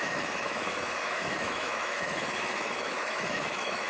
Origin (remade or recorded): remade